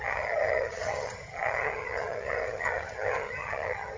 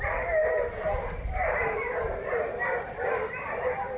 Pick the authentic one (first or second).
second